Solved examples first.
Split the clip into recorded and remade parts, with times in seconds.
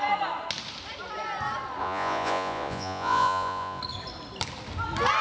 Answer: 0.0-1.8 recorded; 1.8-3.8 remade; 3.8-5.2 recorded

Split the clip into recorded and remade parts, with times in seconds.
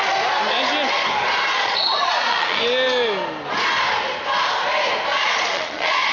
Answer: 0.0-1.5 recorded; 1.5-2.6 remade; 2.6-5.1 recorded; 5.1-6.1 remade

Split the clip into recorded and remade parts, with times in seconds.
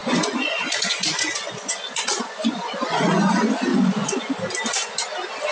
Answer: 0.0-3.3 remade; 3.3-3.7 recorded; 3.7-4.3 remade; 4.3-5.5 recorded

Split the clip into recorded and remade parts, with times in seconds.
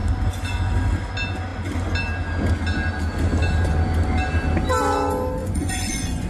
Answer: 0.0-5.4 recorded; 5.4-6.3 remade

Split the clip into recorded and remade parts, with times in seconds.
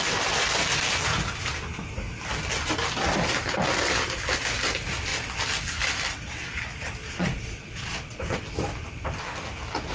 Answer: 0.0-7.0 recorded; 7.0-8.4 remade; 8.4-9.9 recorded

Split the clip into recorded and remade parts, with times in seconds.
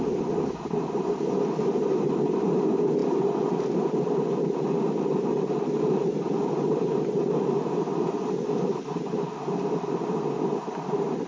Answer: 0.0-11.3 recorded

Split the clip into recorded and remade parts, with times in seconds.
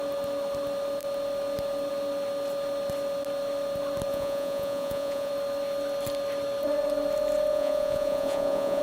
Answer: 0.0-4.1 recorded; 4.1-5.3 remade; 5.3-7.5 recorded; 7.5-8.8 remade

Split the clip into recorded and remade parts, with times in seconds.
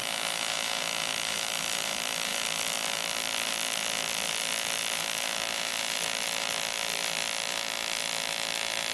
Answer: 0.0-8.9 recorded